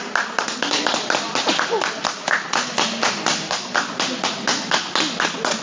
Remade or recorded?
recorded